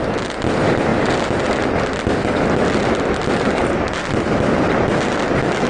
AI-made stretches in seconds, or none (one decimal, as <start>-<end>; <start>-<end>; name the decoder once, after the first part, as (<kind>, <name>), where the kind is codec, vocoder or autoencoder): none